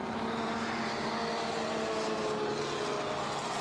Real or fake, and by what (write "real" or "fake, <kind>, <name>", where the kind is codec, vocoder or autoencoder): real